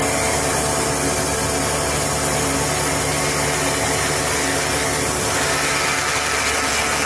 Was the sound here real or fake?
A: real